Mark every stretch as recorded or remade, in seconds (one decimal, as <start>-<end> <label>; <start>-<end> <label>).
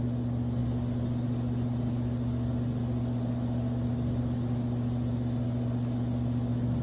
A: 0.0-6.8 recorded